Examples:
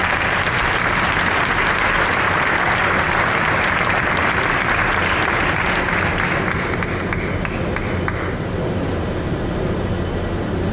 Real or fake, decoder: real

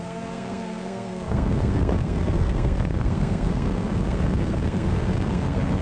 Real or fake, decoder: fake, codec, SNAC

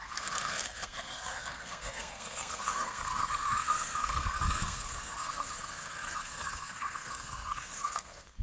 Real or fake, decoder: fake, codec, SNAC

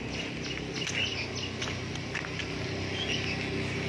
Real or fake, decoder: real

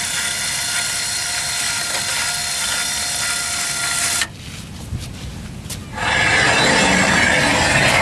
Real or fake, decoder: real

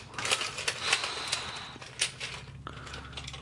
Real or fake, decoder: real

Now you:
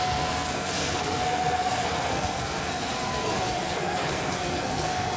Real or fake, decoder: fake, codec, SNAC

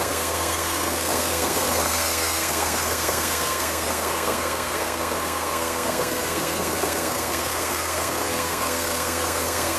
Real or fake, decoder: fake, codec, SNAC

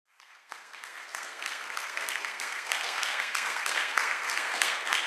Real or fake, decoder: fake, codec, SNAC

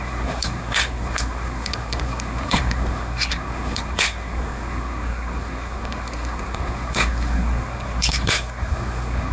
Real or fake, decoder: fake, codec, SNAC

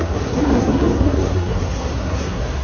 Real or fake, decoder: fake, codec, SNAC